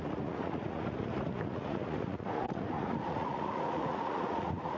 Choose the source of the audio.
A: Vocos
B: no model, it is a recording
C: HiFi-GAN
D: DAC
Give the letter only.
A